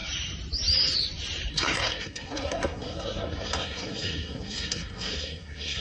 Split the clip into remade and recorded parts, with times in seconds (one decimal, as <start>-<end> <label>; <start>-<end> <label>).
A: 0.0-1.5 recorded; 1.5-5.8 remade